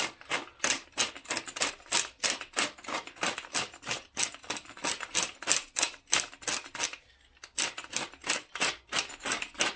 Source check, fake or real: real